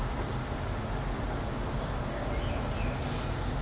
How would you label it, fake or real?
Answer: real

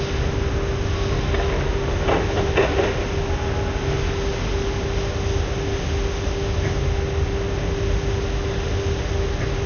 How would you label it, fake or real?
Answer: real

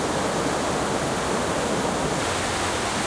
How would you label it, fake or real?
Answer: real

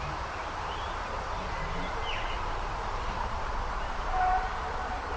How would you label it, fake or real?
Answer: fake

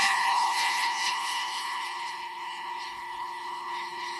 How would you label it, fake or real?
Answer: fake